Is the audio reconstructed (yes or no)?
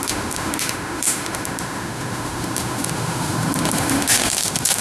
yes